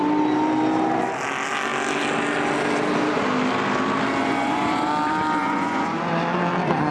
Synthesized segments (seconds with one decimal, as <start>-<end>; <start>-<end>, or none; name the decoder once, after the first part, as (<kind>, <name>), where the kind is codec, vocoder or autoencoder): 4.2-4.9 (vocoder, Vocos); 5.4-6.1